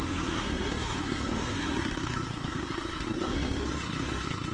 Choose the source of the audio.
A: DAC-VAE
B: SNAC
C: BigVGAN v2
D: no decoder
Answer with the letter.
B